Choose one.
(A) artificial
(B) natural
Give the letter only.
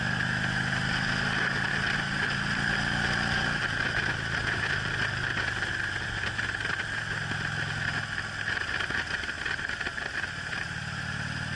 B